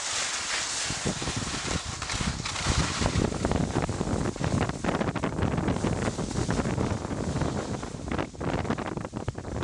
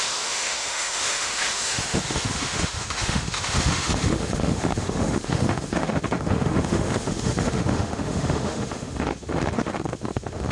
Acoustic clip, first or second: first